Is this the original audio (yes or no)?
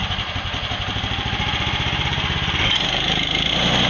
yes